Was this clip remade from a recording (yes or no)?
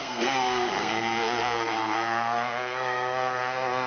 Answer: yes